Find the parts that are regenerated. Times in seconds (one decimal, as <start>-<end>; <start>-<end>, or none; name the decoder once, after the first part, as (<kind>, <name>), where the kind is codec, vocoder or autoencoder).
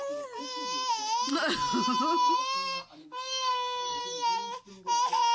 3.0-4.0 (codec, SNAC)